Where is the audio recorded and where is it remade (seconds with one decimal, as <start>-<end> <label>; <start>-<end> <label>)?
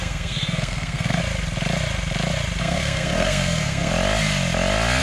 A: 0.0-1.2 remade; 1.2-2.6 recorded; 2.6-3.9 remade; 3.9-5.0 recorded